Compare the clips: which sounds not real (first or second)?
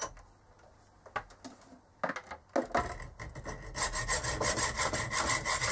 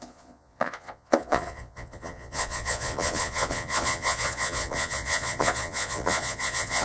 second